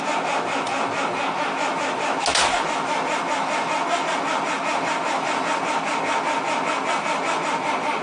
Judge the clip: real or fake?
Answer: real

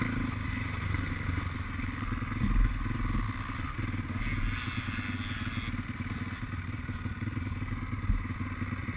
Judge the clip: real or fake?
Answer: real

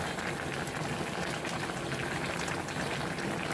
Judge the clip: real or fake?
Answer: real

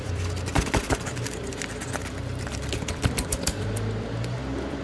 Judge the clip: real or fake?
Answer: fake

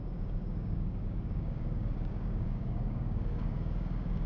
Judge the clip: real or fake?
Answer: fake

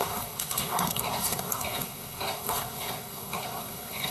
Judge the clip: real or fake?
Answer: fake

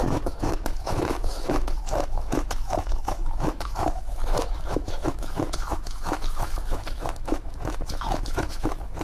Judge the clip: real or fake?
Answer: fake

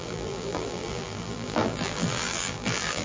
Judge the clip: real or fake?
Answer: fake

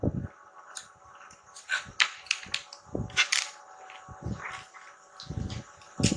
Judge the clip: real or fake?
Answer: real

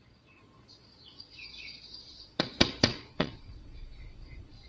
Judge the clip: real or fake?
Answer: fake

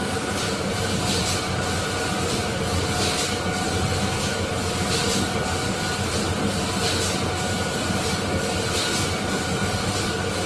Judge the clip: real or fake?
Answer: real